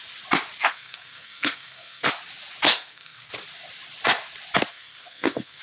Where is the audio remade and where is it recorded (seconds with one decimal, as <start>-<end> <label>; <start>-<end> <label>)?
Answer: 0.0-0.7 recorded; 0.7-2.1 remade; 2.1-2.7 recorded; 2.7-3.3 remade; 3.3-4.7 recorded; 4.7-5.6 remade